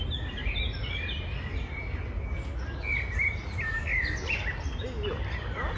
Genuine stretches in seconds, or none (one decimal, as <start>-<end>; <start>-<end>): 0.0-5.8

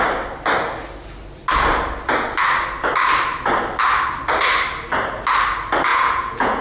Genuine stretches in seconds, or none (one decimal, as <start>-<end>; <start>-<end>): 0.0-5.9

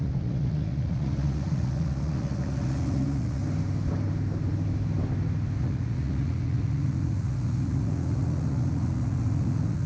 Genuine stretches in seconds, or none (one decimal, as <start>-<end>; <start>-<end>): 3.4-5.6

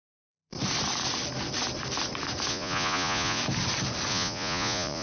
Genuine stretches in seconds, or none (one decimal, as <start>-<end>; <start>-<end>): 0.5-2.5; 3.4-4.1

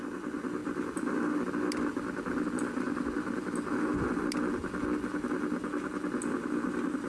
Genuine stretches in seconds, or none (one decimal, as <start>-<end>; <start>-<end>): 0.0-7.1